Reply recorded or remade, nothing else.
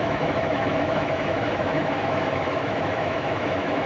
remade